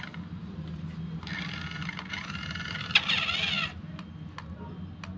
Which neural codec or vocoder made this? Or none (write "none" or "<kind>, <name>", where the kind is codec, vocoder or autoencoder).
none